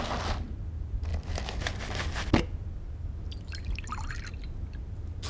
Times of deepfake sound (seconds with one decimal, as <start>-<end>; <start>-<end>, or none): none